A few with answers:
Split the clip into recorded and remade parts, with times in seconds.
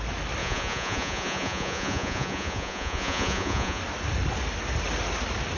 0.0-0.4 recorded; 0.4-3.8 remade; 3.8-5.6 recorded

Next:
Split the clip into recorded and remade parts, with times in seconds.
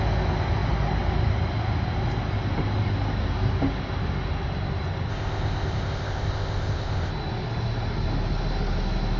0.0-5.1 recorded; 5.1-7.1 remade; 7.1-9.2 recorded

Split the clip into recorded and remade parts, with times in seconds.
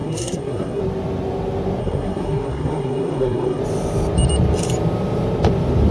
0.0-0.8 remade; 0.8-1.8 recorded; 1.8-3.6 remade; 3.6-5.9 recorded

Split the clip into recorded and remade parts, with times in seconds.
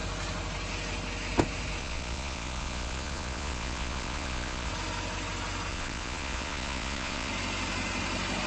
0.0-1.8 recorded; 1.8-4.7 remade; 4.7-5.7 recorded; 5.7-7.3 remade; 7.3-8.5 recorded